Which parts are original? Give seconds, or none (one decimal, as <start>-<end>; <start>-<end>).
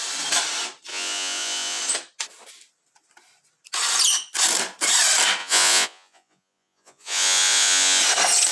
0.0-0.9; 1.8-5.4; 8.0-8.5